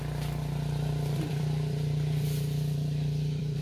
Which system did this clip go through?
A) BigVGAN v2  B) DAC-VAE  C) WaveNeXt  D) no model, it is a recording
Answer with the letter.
A